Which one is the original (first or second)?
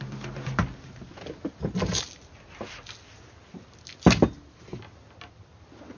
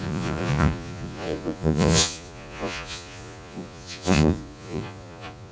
first